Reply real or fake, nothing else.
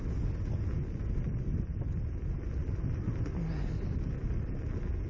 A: real